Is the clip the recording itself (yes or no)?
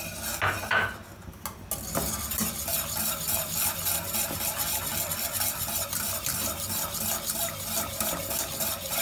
yes